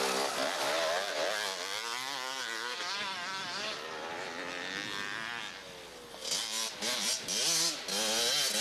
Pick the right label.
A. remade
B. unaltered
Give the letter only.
B